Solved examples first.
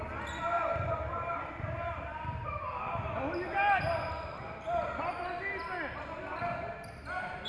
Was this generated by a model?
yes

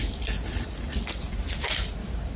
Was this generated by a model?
yes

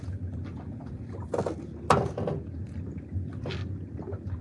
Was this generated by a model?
no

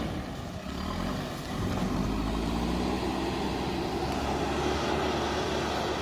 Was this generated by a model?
no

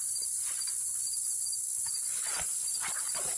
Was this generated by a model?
no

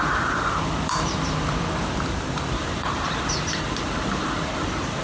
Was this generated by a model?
yes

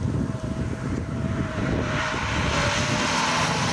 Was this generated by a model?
no